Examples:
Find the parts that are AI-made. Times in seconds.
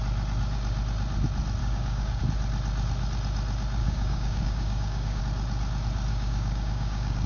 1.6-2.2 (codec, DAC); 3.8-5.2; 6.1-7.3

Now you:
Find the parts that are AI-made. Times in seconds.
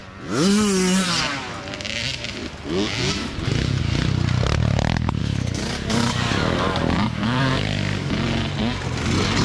5.2-8.1 (codec, DAC)